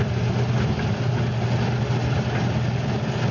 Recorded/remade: recorded